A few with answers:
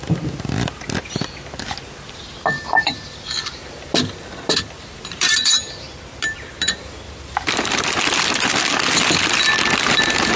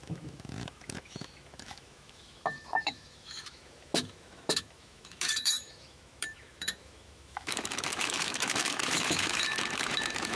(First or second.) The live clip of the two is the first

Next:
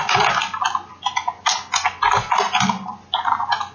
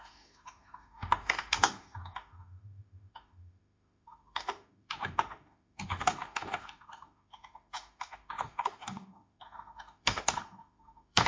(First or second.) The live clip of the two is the first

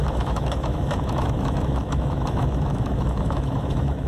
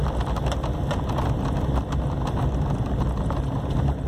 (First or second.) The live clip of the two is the second